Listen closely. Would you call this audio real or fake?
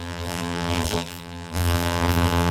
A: fake